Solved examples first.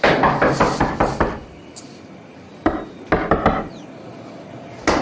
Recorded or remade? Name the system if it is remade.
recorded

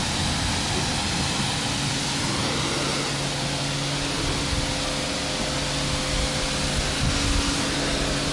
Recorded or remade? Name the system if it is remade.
recorded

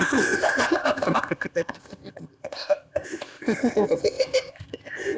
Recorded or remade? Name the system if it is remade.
remade, codec, ZipCodec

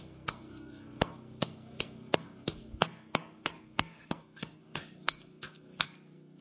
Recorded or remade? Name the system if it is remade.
remade, codec, SNAC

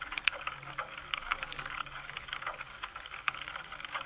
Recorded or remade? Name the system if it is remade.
remade, codec, DAC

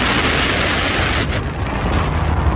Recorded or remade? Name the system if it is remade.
recorded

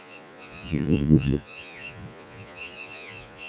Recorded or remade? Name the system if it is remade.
remade, vocoder, Vocos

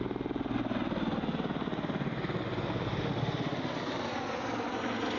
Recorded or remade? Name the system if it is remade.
recorded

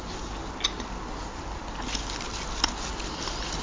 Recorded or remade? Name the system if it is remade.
recorded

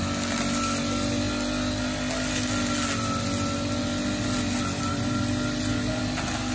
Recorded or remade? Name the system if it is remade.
recorded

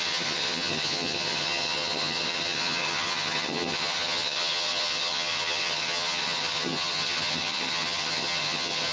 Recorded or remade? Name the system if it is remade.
remade, vocoder, HiFi-GAN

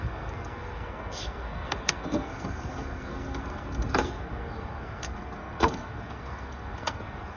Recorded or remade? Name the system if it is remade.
remade, codec, SNAC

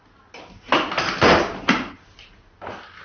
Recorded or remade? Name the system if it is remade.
recorded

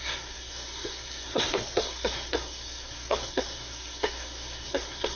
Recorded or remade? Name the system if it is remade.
remade, codec, SNAC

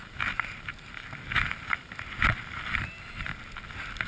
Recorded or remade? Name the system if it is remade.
recorded